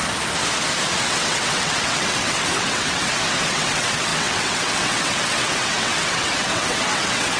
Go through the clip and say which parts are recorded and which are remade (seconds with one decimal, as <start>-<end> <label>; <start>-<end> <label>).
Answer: 0.0-1.0 recorded; 1.0-7.4 remade